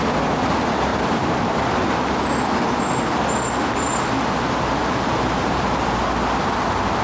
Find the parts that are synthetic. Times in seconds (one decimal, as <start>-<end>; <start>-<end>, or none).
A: 0.9-1.9; 4.8-6.0